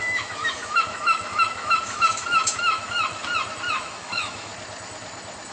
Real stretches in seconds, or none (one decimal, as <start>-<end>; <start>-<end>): 3.2-3.7; 4.5-5.5